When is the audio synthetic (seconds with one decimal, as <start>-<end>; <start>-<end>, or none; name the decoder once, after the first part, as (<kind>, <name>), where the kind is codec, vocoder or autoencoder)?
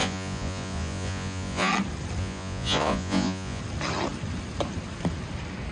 0.0-1.7 (vocoder, Vocos); 2.2-3.6